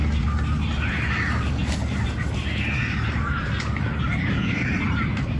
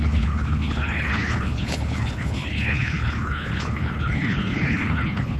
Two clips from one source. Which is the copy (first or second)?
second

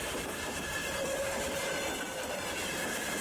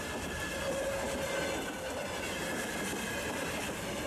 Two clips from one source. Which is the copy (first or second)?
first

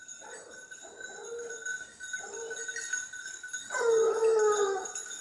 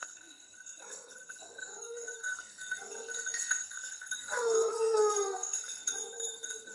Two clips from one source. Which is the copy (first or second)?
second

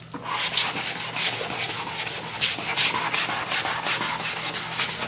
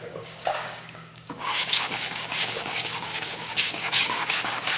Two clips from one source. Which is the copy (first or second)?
second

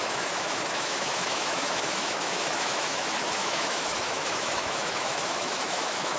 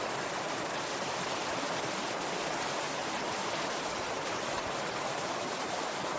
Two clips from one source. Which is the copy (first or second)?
first